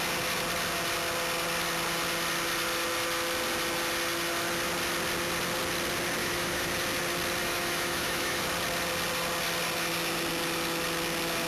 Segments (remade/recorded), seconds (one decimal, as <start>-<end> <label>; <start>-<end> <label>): 0.0-6.2 recorded; 6.2-6.7 remade; 6.7-7.4 recorded; 7.4-8.4 remade; 8.4-11.5 recorded